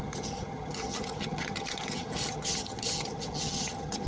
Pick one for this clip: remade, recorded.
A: remade